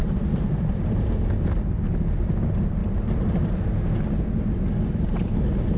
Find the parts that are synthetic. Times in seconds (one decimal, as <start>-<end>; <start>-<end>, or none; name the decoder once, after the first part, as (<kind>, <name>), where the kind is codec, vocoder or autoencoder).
0.0-0.7 (vocoder, BigVGAN v2)